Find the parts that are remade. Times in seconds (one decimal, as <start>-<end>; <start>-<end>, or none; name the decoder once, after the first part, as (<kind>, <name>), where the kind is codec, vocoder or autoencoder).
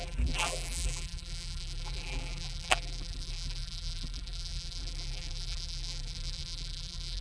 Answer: 0.0-7.2 (vocoder, BigVGAN v2)